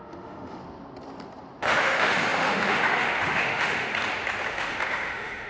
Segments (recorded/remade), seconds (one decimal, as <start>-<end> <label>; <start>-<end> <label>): 0.0-0.6 remade; 0.6-1.6 recorded; 1.6-3.9 remade; 3.9-4.5 recorded; 4.5-5.5 remade